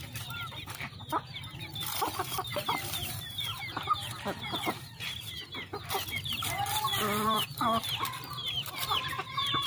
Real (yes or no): no